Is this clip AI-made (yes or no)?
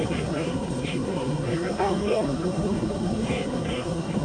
yes